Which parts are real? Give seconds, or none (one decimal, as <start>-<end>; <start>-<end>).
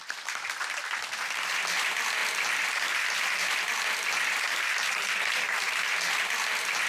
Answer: 0.6-2.2; 4.9-6.9